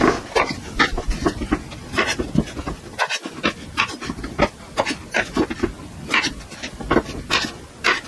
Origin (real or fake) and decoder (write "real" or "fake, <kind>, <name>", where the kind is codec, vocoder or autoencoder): real